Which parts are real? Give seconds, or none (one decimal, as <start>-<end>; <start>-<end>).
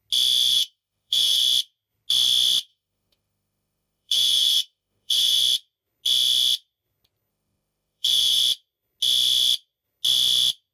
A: 0.0-0.5; 1.4-2.7; 5.4-7.3; 8.4-10.7